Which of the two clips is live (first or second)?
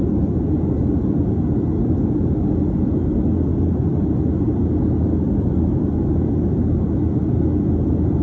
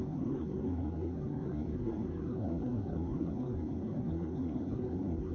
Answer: first